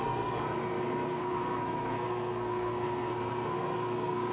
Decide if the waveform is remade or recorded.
remade